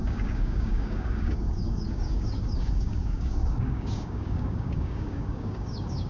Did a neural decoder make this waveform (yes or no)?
yes